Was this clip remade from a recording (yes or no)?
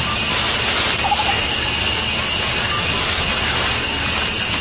no